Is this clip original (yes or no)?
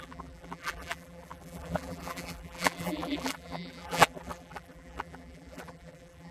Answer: no